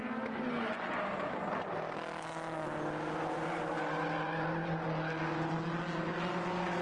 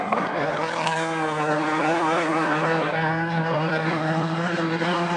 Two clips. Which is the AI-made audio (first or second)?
second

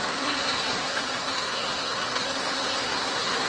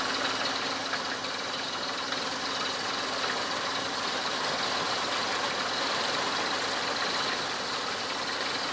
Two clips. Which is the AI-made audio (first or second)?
first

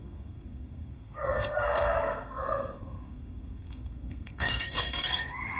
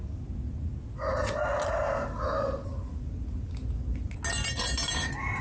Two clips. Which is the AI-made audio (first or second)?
first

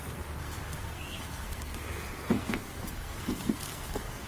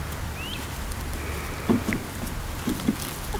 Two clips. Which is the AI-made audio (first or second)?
first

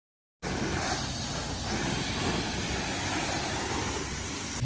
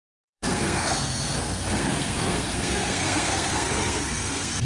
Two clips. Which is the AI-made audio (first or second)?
second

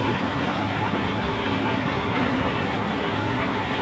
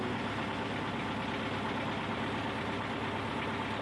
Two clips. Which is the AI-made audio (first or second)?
first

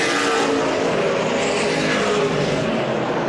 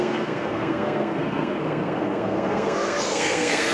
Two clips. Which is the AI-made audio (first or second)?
second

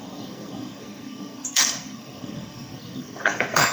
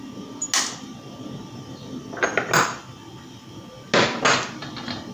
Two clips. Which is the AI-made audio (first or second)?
first